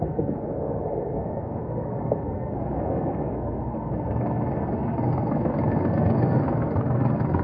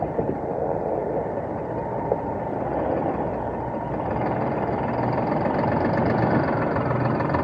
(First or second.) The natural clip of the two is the second